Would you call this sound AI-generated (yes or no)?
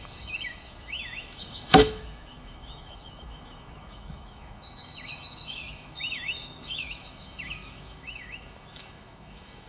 yes